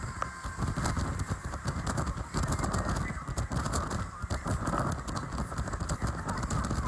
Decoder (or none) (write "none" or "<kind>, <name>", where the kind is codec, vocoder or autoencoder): none